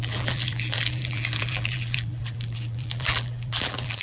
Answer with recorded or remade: remade